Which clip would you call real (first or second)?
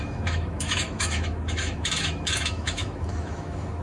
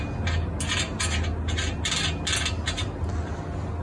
second